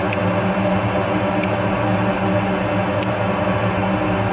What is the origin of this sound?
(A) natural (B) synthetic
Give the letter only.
A